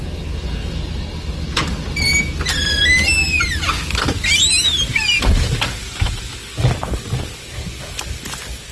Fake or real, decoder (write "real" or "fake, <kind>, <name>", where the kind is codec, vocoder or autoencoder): real